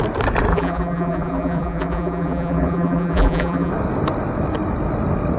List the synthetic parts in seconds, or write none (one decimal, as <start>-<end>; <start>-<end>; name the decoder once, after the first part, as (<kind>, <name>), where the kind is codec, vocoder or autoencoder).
0.5-3.7 (vocoder, BigVGAN v2)